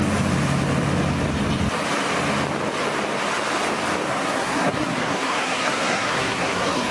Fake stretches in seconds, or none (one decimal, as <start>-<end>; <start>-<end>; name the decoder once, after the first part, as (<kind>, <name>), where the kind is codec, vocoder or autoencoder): 4.1-6.9 (codec, SNAC)